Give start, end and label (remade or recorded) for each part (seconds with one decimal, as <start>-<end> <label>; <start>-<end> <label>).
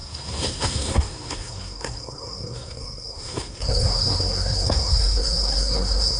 0.0-6.2 remade